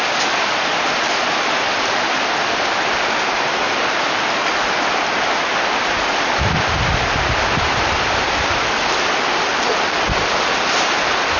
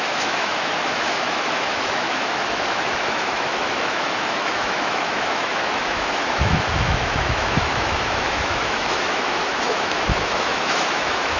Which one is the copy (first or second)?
second